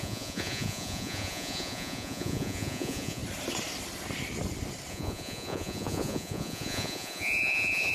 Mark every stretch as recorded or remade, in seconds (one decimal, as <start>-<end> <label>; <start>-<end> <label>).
0.0-3.2 remade; 3.2-4.9 recorded; 4.9-7.9 remade